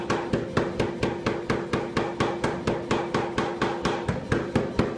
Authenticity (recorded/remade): recorded